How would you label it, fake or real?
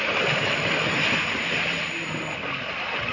real